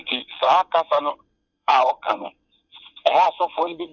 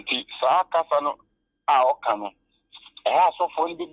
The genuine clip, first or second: second